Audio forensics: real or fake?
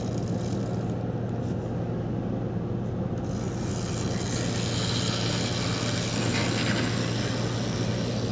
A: real